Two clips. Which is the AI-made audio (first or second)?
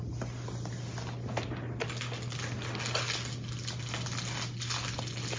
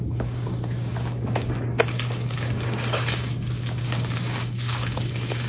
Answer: second